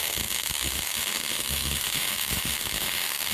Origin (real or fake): fake